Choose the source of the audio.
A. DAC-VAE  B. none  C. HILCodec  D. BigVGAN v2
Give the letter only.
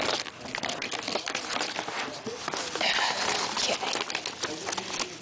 B